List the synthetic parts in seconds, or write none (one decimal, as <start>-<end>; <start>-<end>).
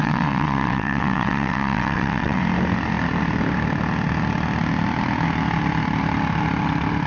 0.0-2.4